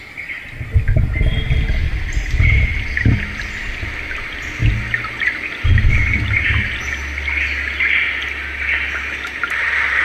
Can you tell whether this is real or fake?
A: real